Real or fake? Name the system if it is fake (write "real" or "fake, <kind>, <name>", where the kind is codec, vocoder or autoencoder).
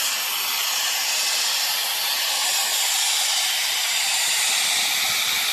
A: real